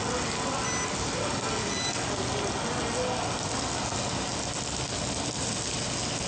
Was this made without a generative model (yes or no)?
yes